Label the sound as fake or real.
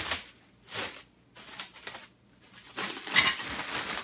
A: real